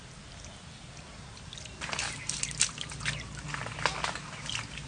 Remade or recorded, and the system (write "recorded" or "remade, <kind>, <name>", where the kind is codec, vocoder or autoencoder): recorded